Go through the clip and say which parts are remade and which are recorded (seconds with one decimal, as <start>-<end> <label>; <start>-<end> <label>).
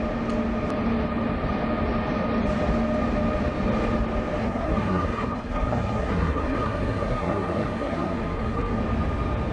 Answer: 0.0-4.4 recorded; 4.4-8.8 remade; 8.8-9.5 recorded